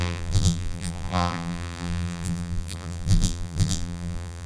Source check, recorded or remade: remade